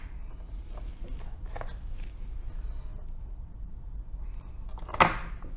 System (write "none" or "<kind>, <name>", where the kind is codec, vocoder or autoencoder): none